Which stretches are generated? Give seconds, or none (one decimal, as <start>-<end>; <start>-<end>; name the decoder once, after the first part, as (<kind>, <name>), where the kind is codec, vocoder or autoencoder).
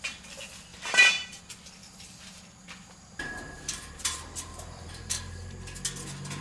0.7-1.4 (vocoder, BigVGAN v2); 1.8-5.6